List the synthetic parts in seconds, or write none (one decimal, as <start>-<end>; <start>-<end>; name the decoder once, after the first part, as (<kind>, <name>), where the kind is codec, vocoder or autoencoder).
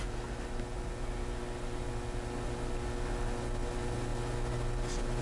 none